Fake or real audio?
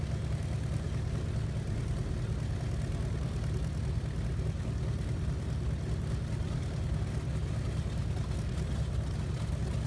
real